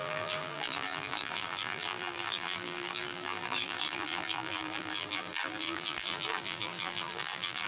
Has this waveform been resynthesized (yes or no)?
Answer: yes